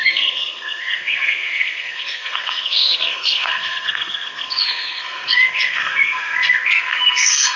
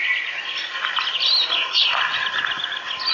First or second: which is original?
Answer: second